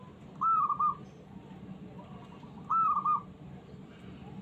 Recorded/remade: recorded